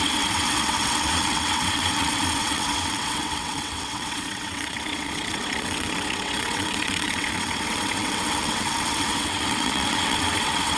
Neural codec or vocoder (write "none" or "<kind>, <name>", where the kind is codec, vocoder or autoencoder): vocoder, WaveNeXt